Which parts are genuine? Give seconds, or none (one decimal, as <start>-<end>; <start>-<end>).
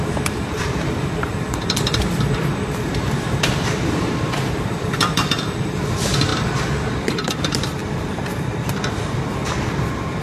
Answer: 9.4-10.2